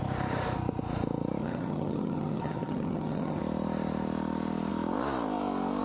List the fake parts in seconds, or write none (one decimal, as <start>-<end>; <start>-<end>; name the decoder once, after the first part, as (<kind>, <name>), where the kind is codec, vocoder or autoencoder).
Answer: 1.4-3.4 (vocoder, HiFi-GAN)